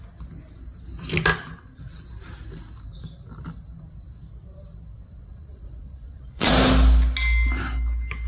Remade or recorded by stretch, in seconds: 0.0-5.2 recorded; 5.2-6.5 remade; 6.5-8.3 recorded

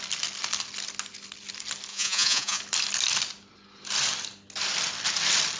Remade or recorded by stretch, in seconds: 0.0-1.9 recorded; 1.9-2.6 remade; 2.6-5.6 recorded

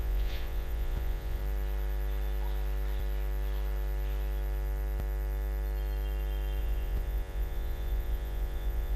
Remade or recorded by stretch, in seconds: 0.0-1.4 remade; 1.4-6.6 recorded; 6.6-9.0 remade

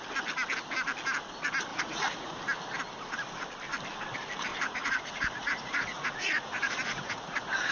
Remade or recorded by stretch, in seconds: 0.0-1.7 recorded; 1.7-2.4 remade; 2.4-4.5 recorded; 4.5-7.7 remade